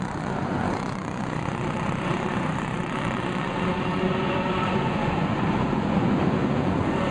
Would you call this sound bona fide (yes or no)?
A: no